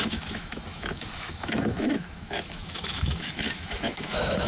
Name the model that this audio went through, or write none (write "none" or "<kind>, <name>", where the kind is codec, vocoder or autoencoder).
autoencoder, DAC-VAE